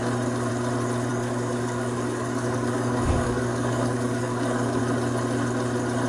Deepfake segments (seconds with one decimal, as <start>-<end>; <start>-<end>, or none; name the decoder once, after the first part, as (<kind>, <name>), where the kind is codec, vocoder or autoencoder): 1.1-4.8 (codec, DAC)